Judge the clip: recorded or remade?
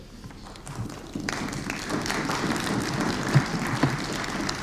recorded